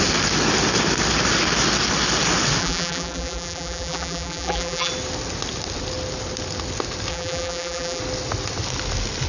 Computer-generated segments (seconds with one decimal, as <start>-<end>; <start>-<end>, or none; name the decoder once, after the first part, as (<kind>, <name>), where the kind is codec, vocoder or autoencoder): 2.6-4.9 (vocoder, BigVGAN v2); 7.1-8.0